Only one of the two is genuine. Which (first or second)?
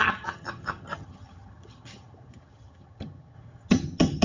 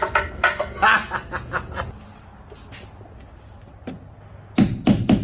second